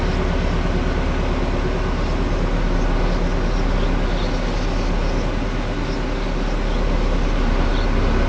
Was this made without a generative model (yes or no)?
yes